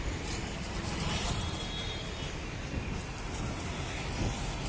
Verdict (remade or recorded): recorded